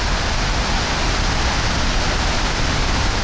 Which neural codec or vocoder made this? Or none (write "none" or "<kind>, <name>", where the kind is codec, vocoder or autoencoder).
none